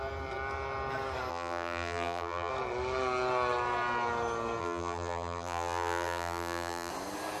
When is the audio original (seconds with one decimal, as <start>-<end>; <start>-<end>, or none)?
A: 0.0-1.3; 2.5-4.6; 6.9-7.4